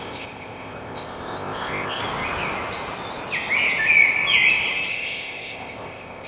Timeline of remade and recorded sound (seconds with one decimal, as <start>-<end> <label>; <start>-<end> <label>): 0.0-2.0 remade; 2.0-4.9 recorded; 4.9-6.3 remade